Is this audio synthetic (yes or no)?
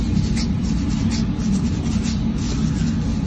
no